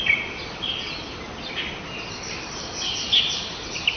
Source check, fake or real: real